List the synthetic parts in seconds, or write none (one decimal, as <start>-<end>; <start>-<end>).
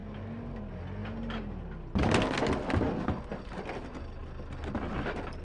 none